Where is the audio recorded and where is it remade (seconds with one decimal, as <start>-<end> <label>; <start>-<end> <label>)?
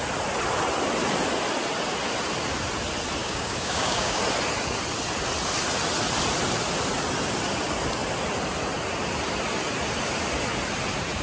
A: 0.0-3.2 recorded; 3.2-4.2 remade; 4.2-11.2 recorded